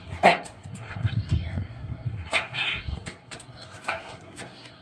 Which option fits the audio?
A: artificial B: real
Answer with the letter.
A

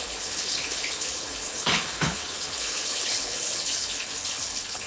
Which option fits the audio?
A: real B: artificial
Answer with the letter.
B